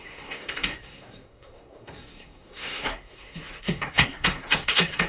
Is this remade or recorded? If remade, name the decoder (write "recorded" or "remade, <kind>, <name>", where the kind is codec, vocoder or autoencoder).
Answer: remade, codec, SNAC